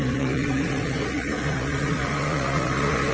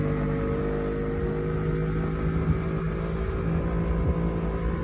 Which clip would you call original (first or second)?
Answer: second